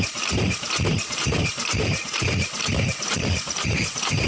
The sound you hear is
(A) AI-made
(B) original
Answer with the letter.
A